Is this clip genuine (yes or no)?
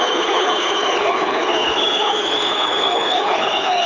no